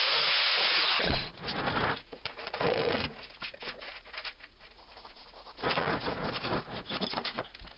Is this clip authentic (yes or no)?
no